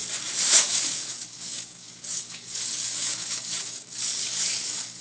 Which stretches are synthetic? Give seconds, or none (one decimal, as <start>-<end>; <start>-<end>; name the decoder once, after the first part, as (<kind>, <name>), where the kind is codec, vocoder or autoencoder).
0.5-5.0 (codec, DAC)